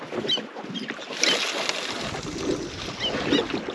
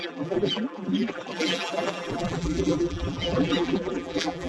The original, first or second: first